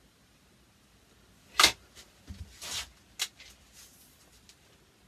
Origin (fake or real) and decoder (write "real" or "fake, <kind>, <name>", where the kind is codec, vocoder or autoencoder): real